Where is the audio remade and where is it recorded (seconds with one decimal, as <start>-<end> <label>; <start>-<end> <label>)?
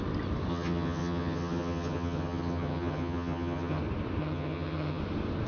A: 0.0-0.5 recorded; 0.5-3.8 remade; 3.8-4.2 recorded; 4.2-5.0 remade; 5.0-5.5 recorded